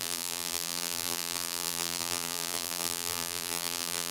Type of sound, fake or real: fake